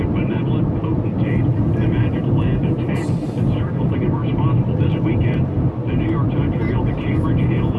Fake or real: real